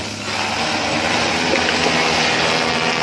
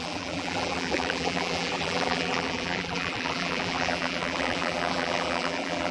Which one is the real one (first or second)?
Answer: first